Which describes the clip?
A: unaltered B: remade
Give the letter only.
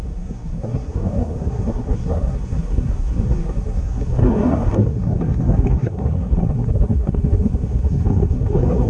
B